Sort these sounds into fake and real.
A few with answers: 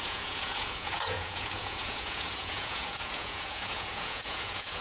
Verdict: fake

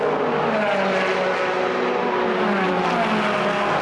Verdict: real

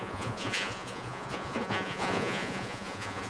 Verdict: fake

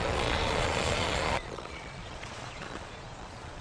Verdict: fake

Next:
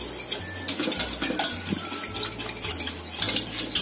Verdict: real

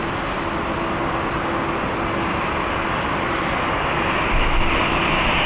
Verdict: real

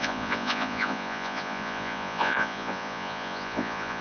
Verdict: fake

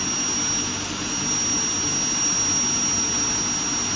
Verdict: real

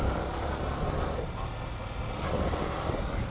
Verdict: real